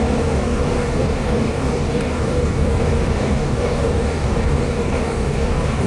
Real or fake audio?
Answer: fake